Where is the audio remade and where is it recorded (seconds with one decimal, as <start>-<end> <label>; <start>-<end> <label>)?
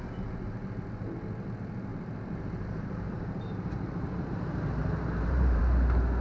0.0-1.9 recorded; 1.9-5.6 remade; 5.6-6.2 recorded